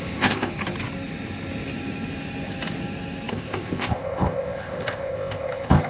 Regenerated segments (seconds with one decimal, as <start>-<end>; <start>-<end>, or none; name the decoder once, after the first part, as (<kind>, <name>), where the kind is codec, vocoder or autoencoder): 0.0-0.5 (codec, ZipCodec); 3.3-5.9